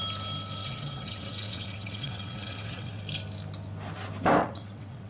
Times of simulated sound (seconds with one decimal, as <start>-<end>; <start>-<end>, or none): 0.6-3.0; 4.4-5.1